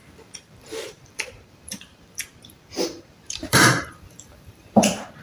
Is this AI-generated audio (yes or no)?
yes